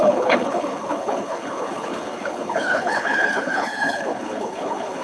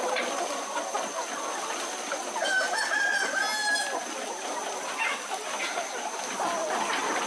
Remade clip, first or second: first